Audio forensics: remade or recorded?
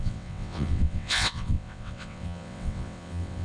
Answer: remade